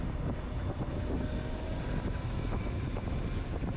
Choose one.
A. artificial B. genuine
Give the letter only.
B